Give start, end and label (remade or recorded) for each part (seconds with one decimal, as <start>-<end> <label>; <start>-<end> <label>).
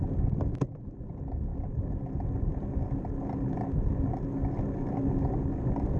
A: 0.0-6.0 recorded